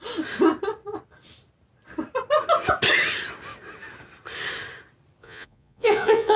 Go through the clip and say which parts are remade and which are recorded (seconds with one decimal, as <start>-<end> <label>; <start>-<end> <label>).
0.0-5.2 recorded; 5.2-6.4 remade